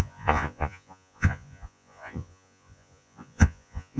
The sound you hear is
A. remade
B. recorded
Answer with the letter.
A